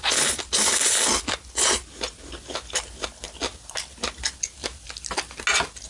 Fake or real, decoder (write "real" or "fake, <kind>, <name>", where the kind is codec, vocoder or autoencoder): real